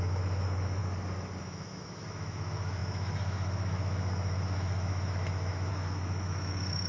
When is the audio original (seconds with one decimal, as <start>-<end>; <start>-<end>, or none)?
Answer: 0.8-1.4